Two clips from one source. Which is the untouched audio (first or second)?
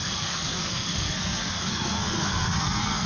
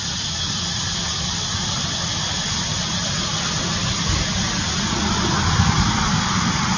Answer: second